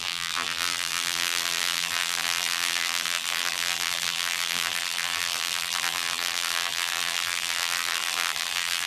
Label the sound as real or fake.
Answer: fake